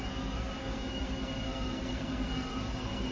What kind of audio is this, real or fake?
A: fake